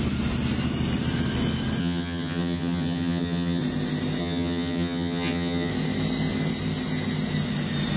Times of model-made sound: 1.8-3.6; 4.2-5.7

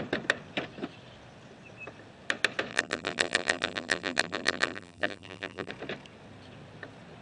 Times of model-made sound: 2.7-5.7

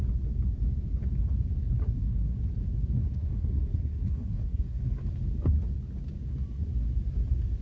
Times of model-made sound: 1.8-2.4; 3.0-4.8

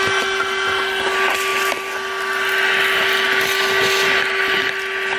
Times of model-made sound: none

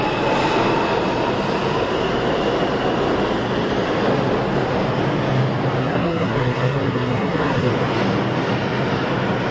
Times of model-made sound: 5.8-7.7

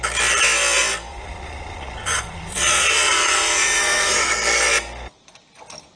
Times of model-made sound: 1.1-4.3

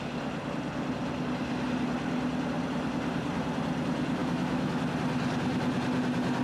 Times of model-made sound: 4.2-4.8

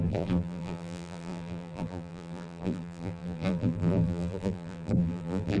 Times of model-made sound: 0.0-5.6